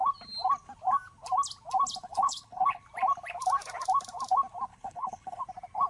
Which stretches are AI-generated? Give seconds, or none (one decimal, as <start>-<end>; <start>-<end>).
2.0-2.8; 4.7-5.4